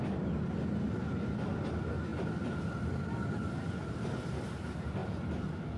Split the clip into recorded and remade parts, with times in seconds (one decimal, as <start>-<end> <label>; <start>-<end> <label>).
0.0-5.8 recorded